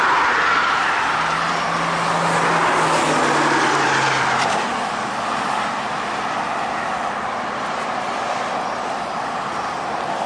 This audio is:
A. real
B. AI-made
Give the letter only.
A